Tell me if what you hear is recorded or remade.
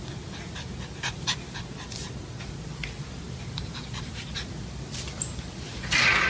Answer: recorded